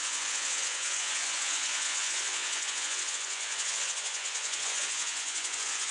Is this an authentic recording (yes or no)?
no